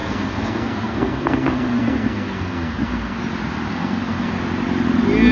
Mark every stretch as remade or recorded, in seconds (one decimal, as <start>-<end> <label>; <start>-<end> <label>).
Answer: 0.0-3.2 remade; 3.2-3.7 recorded; 3.7-4.3 remade; 4.3-5.3 recorded